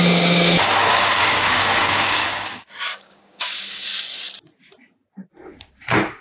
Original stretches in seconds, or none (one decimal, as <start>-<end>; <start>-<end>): 3.9-6.2